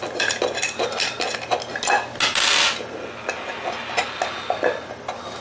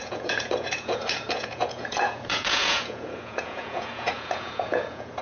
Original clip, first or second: first